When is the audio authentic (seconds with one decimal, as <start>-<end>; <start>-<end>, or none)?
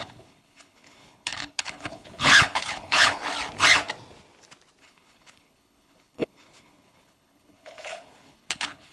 3.2-4.8